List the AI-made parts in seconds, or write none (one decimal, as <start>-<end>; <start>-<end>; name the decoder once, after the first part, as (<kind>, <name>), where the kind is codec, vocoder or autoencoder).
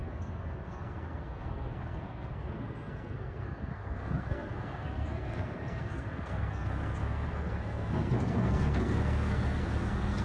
0.0-10.2 (codec, SNAC)